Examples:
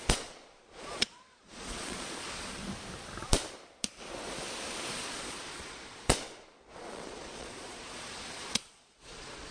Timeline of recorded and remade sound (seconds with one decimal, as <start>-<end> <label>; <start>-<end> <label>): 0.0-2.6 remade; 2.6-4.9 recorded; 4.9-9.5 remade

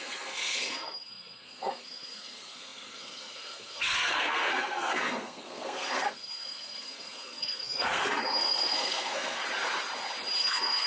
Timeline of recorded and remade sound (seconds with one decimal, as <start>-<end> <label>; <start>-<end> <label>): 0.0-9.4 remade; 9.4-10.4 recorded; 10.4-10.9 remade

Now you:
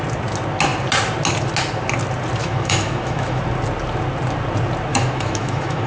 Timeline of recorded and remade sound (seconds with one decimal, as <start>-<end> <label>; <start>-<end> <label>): 0.0-2.4 recorded; 2.4-3.4 remade; 3.4-4.9 recorded; 4.9-5.9 remade

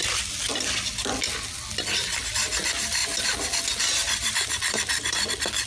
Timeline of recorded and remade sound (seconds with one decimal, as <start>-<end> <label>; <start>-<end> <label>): 0.0-4.0 recorded; 4.0-5.3 remade; 5.3-5.7 recorded